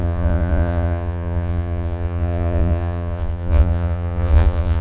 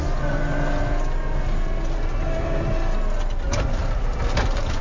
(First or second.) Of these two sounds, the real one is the second